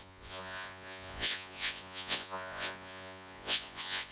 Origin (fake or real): fake